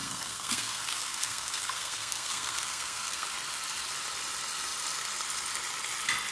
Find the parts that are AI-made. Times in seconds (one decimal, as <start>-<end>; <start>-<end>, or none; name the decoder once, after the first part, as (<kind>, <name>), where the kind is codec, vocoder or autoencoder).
0.0-3.3 (codec, SNAC)